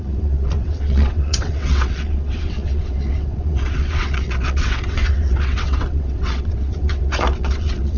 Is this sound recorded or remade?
remade